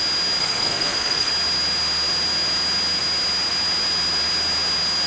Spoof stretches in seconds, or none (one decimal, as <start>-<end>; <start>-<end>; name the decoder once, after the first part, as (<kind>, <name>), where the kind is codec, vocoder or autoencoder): 0.4-1.3 (codec, SNAC)